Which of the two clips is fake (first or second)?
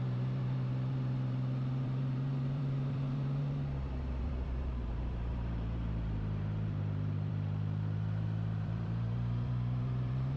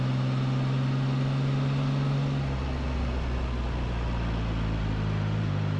first